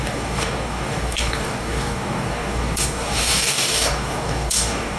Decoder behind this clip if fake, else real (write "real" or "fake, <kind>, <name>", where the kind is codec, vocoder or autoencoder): fake, codec, DAC